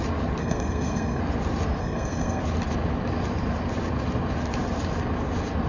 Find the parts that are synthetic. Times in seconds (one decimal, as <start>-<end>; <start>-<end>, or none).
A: 0.4-1.2; 1.8-2.4